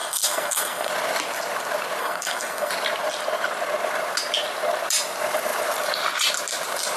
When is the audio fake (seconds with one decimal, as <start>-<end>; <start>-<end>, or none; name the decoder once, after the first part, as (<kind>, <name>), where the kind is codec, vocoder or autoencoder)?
0.0-0.9 (codec, SNAC); 2.0-2.7